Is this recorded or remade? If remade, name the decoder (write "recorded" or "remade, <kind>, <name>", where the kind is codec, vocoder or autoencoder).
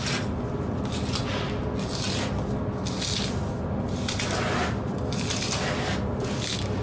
recorded